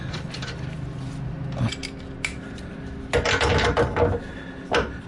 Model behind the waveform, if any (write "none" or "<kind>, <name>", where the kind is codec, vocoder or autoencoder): none